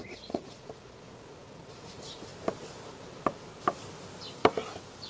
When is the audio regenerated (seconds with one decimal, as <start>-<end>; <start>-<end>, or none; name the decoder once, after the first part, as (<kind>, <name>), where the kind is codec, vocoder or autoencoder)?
0.0-2.3 (vocoder, Vocos)